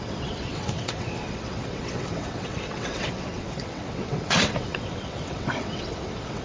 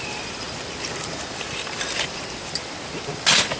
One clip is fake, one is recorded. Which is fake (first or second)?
first